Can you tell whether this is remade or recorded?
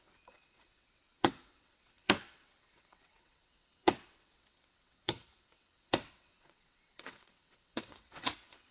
remade